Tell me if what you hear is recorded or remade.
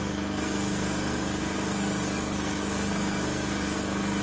remade